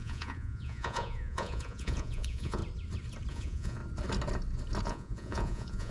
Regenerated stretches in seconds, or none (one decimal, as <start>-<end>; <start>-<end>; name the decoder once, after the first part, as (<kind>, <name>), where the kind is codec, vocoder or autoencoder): 0.0-2.6 (vocoder, Vocos); 3.3-3.8; 4.8-5.9